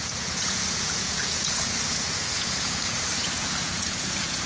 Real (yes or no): no